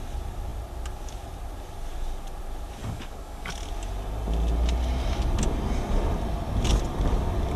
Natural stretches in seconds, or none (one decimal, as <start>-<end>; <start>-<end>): 0.0-2.8; 3.5-7.6

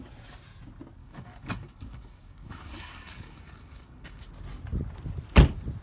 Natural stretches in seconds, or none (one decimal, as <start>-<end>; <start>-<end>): 0.0-1.0; 4.3-5.8

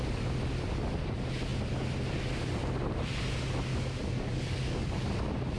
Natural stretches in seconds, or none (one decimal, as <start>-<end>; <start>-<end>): 0.0-3.7; 5.1-5.6

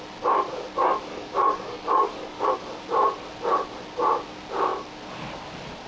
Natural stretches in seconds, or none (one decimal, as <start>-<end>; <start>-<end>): 0.0-1.1; 2.5-5.9

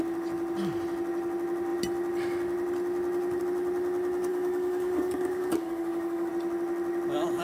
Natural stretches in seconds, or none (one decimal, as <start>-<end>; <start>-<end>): 0.0-4.3; 6.3-7.4